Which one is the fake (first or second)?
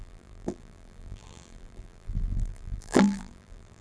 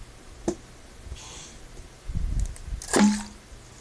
first